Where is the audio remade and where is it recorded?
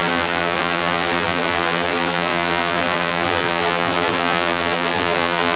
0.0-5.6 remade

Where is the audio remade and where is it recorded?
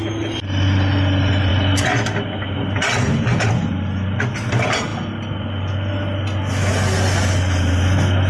0.0-8.3 recorded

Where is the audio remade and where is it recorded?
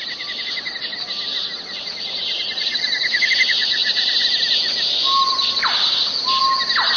0.0-7.0 recorded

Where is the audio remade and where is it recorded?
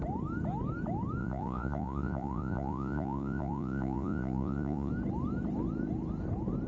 0.0-1.2 recorded; 1.2-4.9 remade; 4.9-6.7 recorded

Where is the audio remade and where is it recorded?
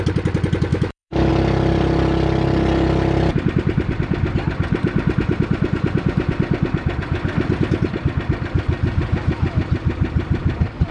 0.0-0.7 recorded; 0.7-1.3 remade; 1.3-10.9 recorded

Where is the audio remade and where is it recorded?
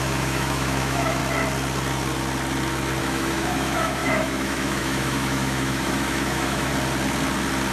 0.0-1.2 remade; 1.2-3.0 recorded; 3.0-6.7 remade; 6.7-7.7 recorded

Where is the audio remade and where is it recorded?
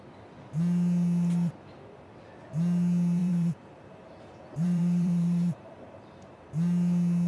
0.0-3.2 recorded; 3.2-6.4 remade; 6.4-7.3 recorded